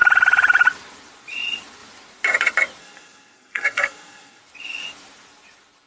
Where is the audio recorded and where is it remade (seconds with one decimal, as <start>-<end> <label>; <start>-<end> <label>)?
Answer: 0.0-2.8 recorded; 2.8-4.4 remade; 4.4-5.9 recorded